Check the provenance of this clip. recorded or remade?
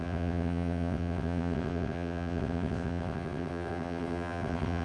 remade